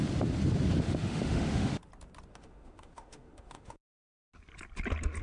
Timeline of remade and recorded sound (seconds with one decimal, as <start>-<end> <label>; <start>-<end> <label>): 0.0-0.8 recorded; 0.8-1.7 remade; 1.7-2.3 recorded; 2.3-4.1 remade; 4.1-5.2 recorded